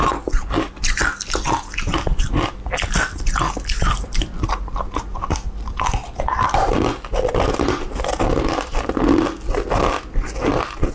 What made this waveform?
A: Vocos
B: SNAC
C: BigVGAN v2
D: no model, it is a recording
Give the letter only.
D